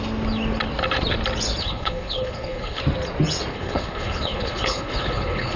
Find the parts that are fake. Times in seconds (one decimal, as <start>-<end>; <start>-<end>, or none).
1.6-2.8; 3.5-5.6